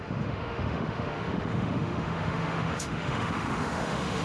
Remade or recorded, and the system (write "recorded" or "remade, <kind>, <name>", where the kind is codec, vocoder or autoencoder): remade, autoencoder, DAC-VAE